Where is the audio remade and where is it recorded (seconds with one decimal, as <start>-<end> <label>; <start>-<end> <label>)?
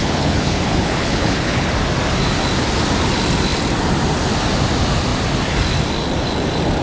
0.0-1.7 remade; 1.7-6.8 recorded